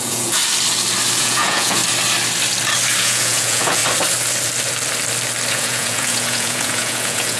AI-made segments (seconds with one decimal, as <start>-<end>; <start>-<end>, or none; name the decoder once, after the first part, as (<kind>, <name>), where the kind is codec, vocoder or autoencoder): 0.0-0.4 (vocoder, Vocos); 1.2-1.8; 3.0-3.8; 5.5-7.4